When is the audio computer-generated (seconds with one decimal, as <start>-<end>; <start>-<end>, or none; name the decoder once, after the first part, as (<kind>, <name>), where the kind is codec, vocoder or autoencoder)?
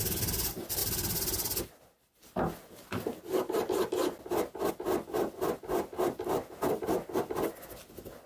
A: none